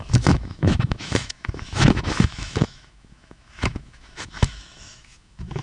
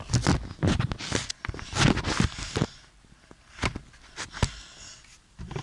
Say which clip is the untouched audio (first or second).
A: second